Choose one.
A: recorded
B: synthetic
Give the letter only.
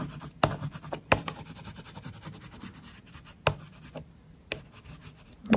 A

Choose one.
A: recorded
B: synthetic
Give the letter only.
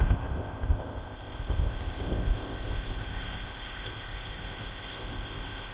B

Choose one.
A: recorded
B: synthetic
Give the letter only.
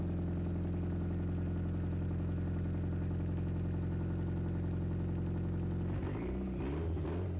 A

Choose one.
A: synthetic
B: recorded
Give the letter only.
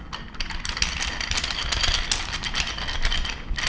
B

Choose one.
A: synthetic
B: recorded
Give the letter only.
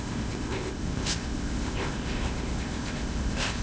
A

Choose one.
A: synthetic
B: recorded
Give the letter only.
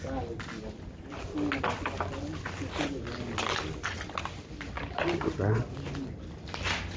B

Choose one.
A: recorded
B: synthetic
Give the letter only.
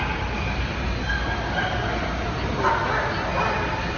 A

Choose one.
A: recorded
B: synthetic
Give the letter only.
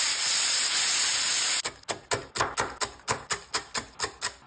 A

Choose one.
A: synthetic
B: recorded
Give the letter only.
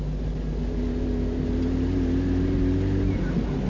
B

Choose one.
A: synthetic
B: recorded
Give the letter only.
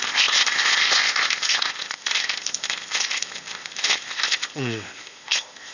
A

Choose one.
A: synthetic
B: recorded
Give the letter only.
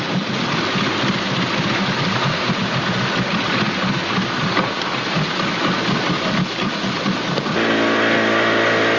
B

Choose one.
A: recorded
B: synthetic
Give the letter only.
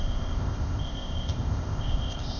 B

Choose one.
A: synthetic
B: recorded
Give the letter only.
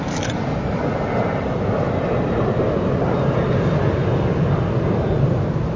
B